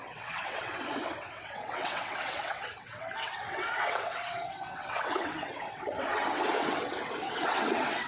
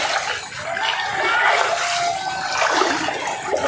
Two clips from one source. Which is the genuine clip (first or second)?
second